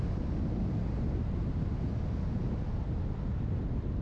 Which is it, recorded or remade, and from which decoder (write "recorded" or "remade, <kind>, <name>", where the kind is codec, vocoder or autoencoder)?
recorded